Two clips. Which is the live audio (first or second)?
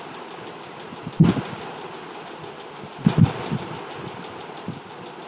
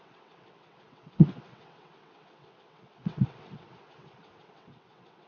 first